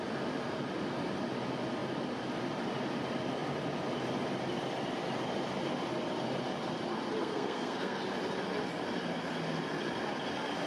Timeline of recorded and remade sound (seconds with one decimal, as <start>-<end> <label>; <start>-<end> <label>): 0.0-7.2 recorded; 7.2-8.0 remade; 8.0-10.7 recorded